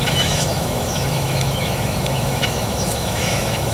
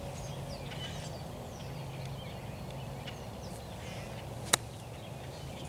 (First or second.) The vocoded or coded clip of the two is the first